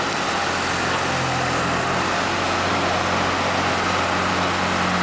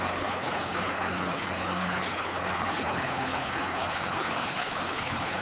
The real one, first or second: first